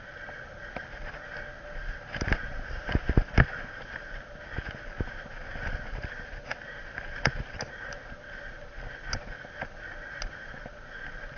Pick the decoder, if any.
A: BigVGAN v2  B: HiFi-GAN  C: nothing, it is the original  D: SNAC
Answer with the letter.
C